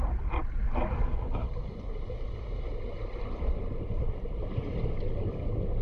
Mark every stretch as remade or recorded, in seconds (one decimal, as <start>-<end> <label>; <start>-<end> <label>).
0.0-5.8 recorded